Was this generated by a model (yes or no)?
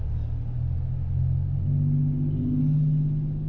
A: no